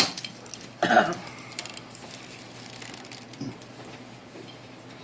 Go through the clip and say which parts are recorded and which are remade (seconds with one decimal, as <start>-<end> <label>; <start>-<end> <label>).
0.0-5.0 recorded